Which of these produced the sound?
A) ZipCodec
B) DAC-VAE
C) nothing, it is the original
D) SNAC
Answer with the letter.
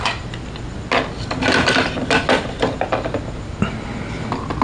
C